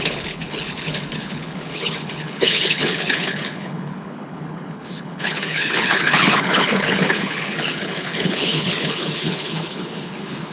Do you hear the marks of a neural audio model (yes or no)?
yes